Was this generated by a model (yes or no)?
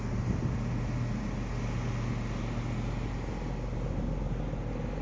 no